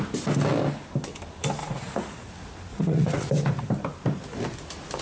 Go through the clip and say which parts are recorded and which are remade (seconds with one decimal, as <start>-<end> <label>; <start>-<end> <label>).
0.0-1.6 recorded; 1.6-2.3 remade; 2.3-2.7 recorded; 2.7-3.3 remade; 3.3-5.0 recorded